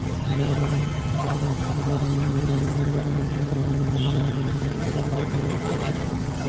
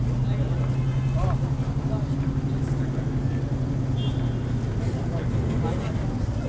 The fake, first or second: first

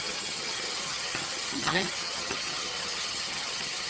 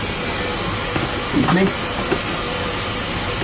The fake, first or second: first